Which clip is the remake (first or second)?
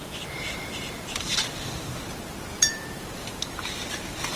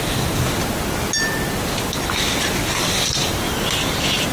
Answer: first